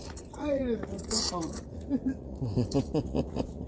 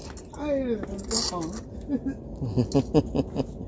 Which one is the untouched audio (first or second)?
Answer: second